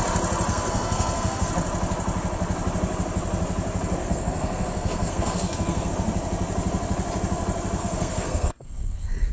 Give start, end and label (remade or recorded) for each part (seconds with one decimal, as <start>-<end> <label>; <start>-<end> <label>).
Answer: 0.0-0.5 recorded; 0.5-1.5 remade; 1.5-4.0 recorded; 4.0-5.9 remade; 5.9-7.8 recorded; 7.8-9.3 remade

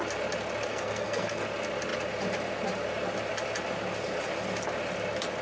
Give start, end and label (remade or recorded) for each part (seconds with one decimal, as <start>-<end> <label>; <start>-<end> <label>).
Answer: 0.0-0.7 recorded; 0.7-1.4 remade; 1.4-5.4 recorded